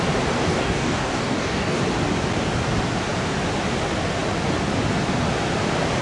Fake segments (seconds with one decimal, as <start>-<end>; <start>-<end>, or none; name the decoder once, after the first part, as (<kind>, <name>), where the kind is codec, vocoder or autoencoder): 0.4-1.8 (codec, DAC)